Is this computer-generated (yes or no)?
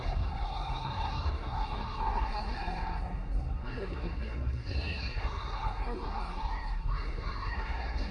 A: yes